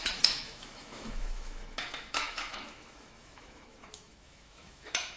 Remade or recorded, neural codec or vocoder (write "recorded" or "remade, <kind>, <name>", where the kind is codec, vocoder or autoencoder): remade, autoencoder, DAC-VAE